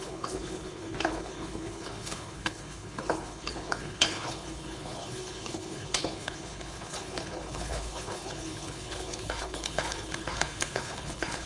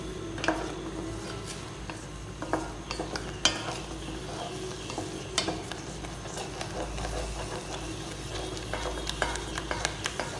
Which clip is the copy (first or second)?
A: first